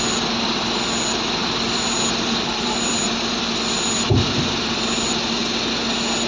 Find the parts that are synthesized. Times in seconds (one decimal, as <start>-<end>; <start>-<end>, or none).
1.4-4.3